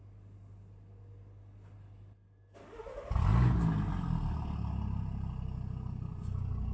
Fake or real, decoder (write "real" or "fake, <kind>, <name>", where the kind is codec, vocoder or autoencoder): real